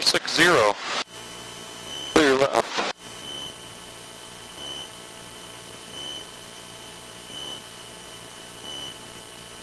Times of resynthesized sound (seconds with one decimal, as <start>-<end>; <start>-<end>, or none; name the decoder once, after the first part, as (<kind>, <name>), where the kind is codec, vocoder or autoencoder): 6.1-7.9 (vocoder, BigVGAN v2)